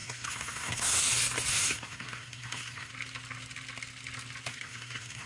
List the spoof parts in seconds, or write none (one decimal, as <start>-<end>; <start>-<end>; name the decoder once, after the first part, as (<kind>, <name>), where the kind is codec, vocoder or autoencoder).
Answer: 0.0-1.1 (codec, SNAC); 1.5-2.9; 4.5-5.3